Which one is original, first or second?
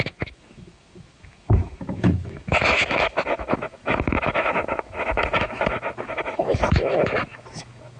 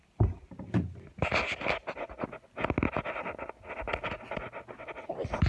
second